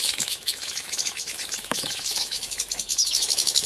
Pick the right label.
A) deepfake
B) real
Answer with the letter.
A